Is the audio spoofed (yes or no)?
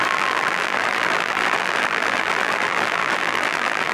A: yes